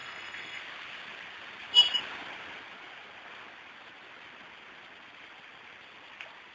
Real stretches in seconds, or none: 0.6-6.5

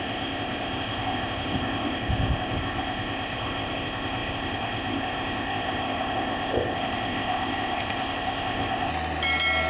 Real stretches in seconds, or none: 8.9-9.7

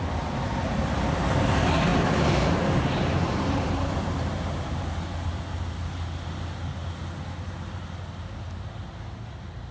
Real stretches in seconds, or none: 0.0-1.9; 4.9-9.7